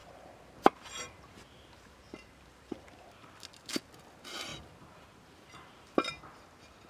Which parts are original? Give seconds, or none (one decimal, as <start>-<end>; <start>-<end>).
3.1-4.5; 6.1-6.9